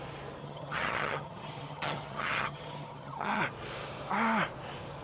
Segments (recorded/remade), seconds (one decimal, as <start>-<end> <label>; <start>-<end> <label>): 0.0-0.4 recorded; 0.4-3.4 remade; 3.4-5.0 recorded